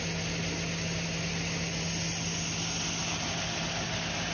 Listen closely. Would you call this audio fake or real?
real